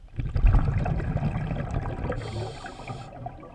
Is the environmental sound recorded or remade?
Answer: recorded